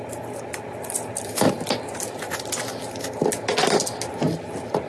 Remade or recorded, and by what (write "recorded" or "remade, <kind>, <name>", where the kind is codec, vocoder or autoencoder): recorded